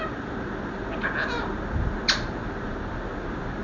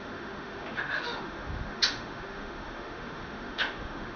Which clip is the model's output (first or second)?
second